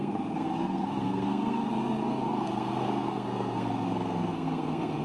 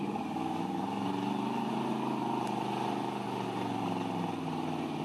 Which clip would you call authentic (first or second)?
second